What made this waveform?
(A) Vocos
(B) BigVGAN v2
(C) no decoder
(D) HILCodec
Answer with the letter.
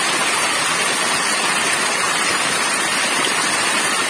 C